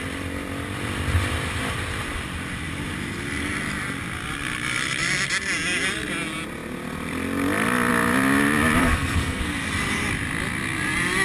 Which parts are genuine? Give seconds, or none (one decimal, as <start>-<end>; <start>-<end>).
0.0-8.8; 9.4-11.2